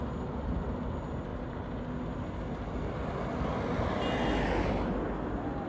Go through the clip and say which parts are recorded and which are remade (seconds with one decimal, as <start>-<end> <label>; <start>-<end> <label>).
0.0-5.7 recorded